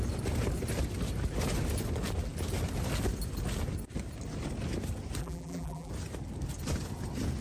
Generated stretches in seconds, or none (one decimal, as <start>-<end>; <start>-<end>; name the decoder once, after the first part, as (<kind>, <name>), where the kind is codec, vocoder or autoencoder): 5.2-5.9 (vocoder, BigVGAN v2)